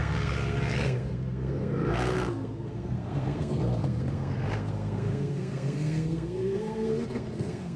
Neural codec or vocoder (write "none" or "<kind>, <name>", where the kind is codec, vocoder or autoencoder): codec, SNAC